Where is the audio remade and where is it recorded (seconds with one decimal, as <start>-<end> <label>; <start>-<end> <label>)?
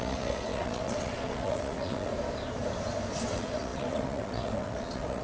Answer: 0.0-2.1 remade; 2.1-3.3 recorded; 3.3-5.2 remade